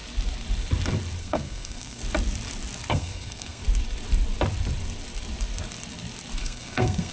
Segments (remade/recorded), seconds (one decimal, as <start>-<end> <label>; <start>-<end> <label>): 0.0-1.2 recorded; 1.2-2.0 remade; 2.0-2.9 recorded; 2.9-3.6 remade; 3.6-6.4 recorded; 6.4-7.1 remade